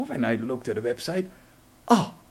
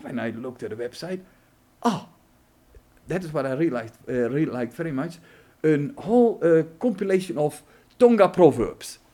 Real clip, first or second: second